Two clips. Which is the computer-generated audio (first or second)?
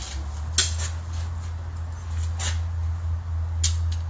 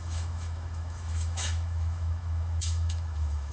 second